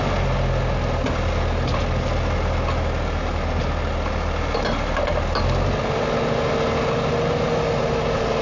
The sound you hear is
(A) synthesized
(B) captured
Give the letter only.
B